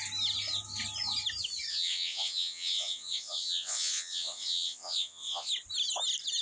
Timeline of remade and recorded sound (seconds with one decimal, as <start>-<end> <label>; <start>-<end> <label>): 0.0-1.7 recorded; 1.7-5.5 remade; 5.5-6.4 recorded